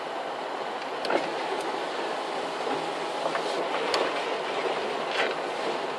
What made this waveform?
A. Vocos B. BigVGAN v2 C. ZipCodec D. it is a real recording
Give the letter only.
D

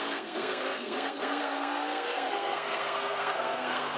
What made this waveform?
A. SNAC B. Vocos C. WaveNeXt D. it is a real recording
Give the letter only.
A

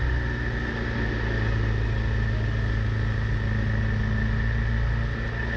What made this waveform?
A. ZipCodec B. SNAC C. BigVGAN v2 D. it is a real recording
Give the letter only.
D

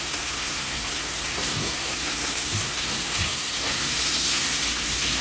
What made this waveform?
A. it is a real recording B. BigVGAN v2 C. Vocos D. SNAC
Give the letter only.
D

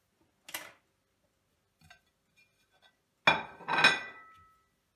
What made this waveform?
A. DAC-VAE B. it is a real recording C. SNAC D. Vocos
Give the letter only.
B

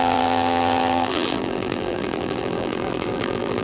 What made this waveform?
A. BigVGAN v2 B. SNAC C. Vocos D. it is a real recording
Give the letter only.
A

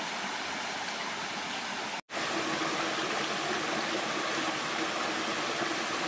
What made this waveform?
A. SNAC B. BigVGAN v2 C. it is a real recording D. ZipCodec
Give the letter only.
C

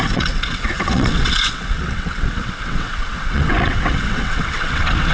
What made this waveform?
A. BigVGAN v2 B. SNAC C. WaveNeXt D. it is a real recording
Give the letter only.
C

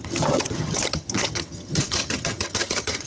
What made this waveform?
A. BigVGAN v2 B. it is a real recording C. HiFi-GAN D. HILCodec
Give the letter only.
C